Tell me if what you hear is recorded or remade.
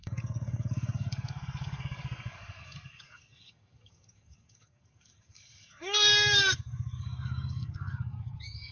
remade